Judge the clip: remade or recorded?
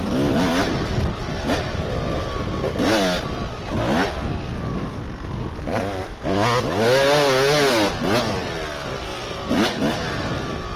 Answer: recorded